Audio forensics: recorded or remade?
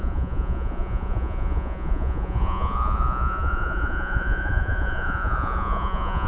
remade